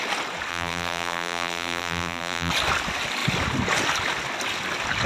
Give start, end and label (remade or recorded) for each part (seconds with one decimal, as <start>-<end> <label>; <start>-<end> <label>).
0.0-0.5 recorded; 0.5-2.5 remade; 2.5-5.1 recorded